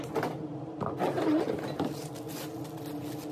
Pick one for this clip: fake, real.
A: real